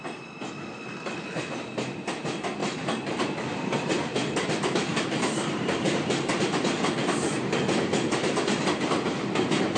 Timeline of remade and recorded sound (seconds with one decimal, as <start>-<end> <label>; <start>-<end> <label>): 0.0-2.6 recorded; 2.6-3.9 remade; 3.9-4.9 recorded; 4.9-6.4 remade; 6.4-9.8 recorded